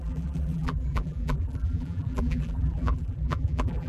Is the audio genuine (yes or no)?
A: no